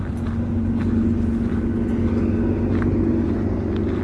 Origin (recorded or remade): recorded